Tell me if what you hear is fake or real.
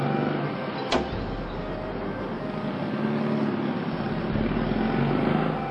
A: real